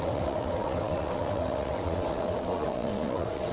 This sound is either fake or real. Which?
fake